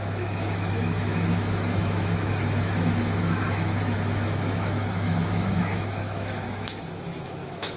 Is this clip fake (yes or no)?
yes